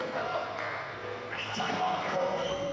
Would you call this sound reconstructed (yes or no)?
yes